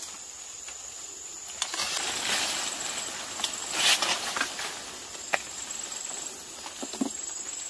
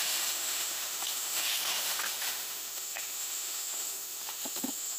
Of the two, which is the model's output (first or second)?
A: second